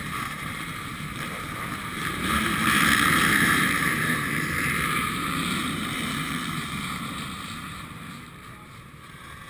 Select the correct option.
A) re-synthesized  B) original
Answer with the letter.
A